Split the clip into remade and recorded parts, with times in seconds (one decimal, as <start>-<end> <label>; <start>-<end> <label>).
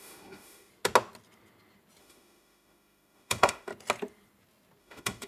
0.0-0.7 remade; 0.7-2.0 recorded; 2.0-3.7 remade; 3.7-4.8 recorded; 4.8-5.3 remade